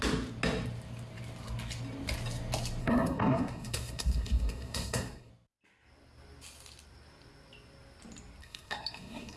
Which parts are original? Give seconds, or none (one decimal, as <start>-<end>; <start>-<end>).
0.0-2.8; 5.3-8.4